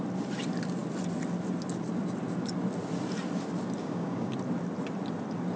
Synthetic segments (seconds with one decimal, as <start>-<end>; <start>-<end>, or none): 3.8-4.3